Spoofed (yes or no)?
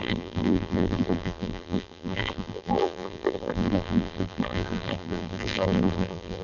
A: yes